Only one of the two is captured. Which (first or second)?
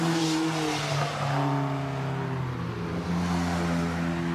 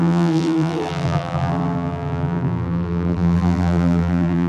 first